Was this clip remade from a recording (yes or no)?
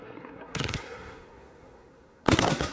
yes